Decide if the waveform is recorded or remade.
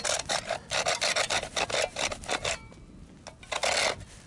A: recorded